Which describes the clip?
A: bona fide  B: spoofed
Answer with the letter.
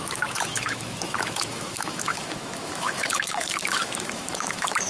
B